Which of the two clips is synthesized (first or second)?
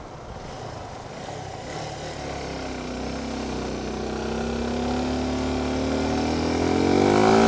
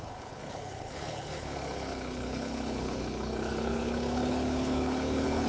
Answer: second